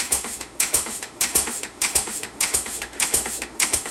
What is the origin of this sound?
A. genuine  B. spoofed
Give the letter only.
B